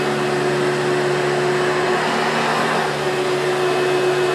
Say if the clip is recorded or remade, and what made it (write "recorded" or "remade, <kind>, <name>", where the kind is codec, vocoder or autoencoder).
recorded